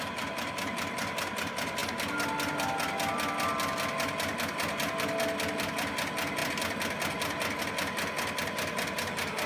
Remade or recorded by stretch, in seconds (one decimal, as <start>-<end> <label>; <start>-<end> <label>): 0.0-9.5 recorded